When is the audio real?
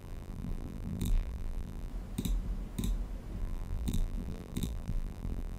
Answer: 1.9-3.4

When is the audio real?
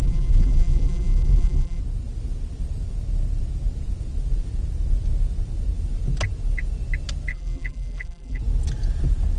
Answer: 1.8-7.3; 8.4-9.4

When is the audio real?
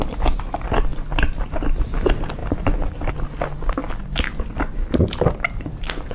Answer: 0.0-2.4; 3.1-6.1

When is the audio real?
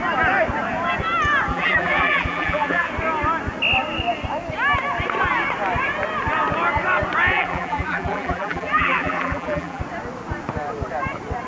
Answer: 0.0-1.5; 2.9-7.3; 9.8-11.5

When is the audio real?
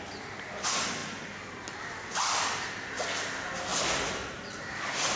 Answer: 0.0-5.2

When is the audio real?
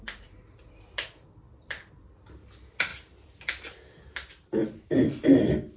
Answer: 0.0-2.9; 4.0-4.6; 5.2-5.8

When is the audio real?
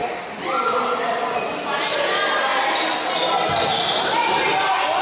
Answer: 1.2-2.5; 3.1-3.7